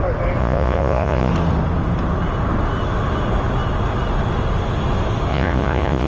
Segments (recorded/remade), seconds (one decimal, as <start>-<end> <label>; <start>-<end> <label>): 0.0-0.4 recorded; 0.4-1.3 remade; 1.3-5.3 recorded; 5.3-6.1 remade